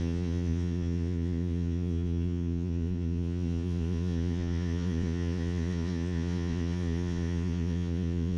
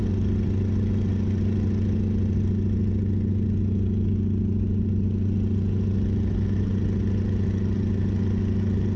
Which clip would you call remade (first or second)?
first